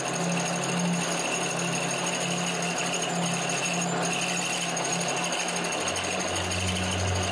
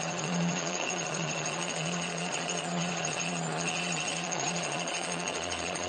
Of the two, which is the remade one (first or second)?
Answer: second